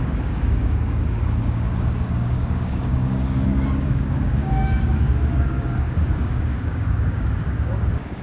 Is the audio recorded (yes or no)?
no